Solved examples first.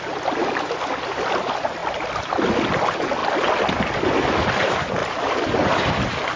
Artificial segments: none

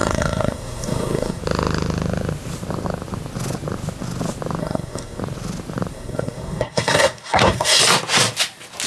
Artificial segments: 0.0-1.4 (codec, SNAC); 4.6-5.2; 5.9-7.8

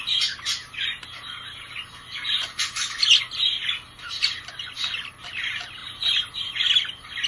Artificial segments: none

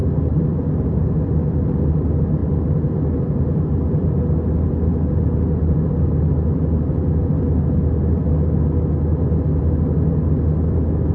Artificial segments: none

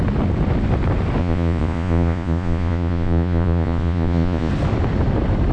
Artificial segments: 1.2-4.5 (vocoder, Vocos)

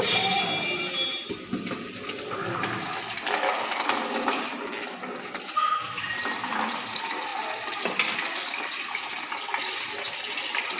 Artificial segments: none

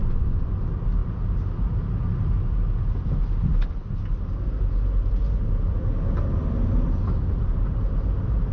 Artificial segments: 0.0-0.6 (vocoder, Vocos)

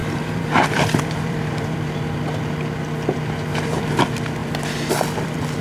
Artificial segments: 0.0-2.2 (vocoder, BigVGAN v2); 3.5-4.0; 4.4-5.6